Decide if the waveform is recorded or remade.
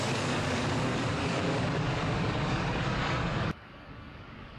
remade